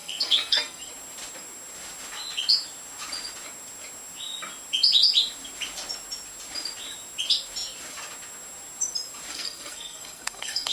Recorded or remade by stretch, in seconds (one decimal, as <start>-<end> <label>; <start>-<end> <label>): 0.0-0.9 remade; 0.9-9.3 recorded; 9.3-10.7 remade